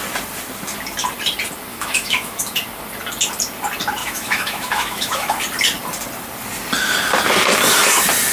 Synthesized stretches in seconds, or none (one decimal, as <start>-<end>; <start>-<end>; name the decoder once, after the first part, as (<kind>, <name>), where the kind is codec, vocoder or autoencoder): 1.7-2.4 (autoencoder, DAC-VAE); 4.0-5.4